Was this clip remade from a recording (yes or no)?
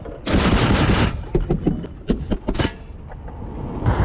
no